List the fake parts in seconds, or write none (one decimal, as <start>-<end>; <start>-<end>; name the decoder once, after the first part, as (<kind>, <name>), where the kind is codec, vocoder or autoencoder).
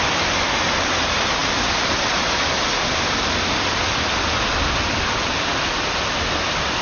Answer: none